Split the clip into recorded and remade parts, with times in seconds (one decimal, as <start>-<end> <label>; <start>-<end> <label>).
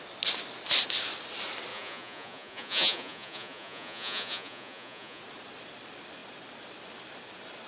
0.0-1.7 recorded; 1.7-5.2 remade; 5.2-7.7 recorded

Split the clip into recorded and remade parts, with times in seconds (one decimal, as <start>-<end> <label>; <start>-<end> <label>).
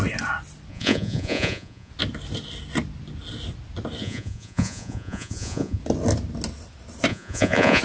0.0-0.7 recorded; 0.7-1.9 remade; 1.9-4.0 recorded; 4.0-5.8 remade; 5.8-7.1 recorded; 7.1-7.8 remade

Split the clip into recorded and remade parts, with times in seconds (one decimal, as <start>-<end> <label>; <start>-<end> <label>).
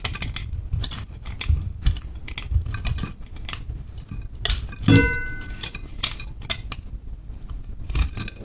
0.0-8.4 recorded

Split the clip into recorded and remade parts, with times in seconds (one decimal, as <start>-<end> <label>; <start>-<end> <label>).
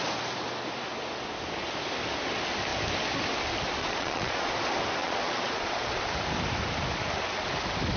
0.0-3.8 recorded; 3.8-4.5 remade; 4.5-5.0 recorded; 5.0-6.0 remade; 6.0-8.0 recorded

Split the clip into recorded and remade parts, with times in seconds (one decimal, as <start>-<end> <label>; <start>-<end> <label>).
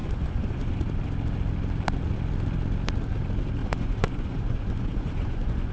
0.0-0.7 remade; 0.7-3.6 recorded; 3.6-5.7 remade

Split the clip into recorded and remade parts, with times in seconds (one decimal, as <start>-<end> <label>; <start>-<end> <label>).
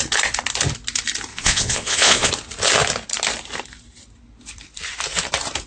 0.0-1.3 recorded; 1.3-2.3 remade; 2.3-5.7 recorded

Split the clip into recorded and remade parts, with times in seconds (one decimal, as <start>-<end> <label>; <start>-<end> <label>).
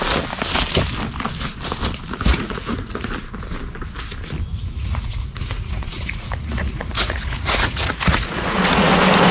0.0-2.3 recorded; 2.3-3.1 remade; 3.1-4.5 recorded; 4.5-8.9 remade; 8.9-9.3 recorded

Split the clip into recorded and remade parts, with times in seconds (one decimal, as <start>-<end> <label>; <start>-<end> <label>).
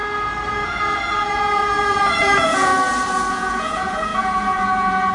0.0-0.5 recorded; 0.5-2.7 remade; 2.7-3.3 recorded; 3.3-5.1 remade